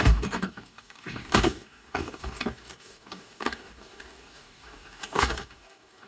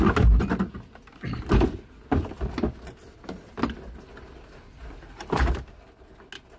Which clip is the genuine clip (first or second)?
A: second